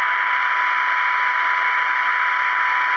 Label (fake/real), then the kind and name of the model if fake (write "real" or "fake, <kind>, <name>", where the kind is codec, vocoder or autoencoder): real